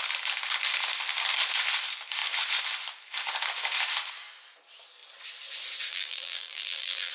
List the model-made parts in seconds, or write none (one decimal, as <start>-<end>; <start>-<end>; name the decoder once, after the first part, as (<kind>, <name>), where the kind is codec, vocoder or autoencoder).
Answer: 5.9-7.1 (vocoder, BigVGAN v2)